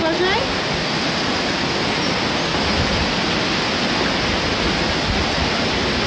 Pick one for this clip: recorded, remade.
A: recorded